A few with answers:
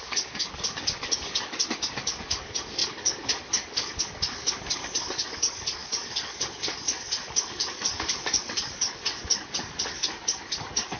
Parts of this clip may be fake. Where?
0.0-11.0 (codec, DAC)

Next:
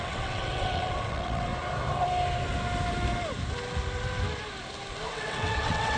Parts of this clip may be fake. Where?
0.0-1.5 (vocoder, WaveNeXt); 5.1-6.0

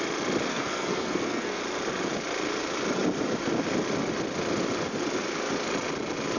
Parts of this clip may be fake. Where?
0.5-1.6 (codec, SNAC)